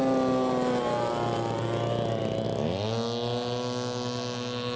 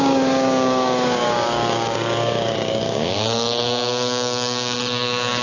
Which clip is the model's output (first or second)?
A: second